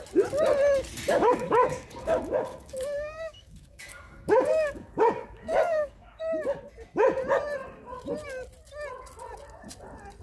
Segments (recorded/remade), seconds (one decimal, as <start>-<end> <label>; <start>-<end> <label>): 0.0-1.1 recorded; 1.1-6.2 remade; 6.2-10.2 recorded